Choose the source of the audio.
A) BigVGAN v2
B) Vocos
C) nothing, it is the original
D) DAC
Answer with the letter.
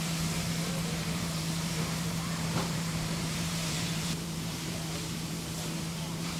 A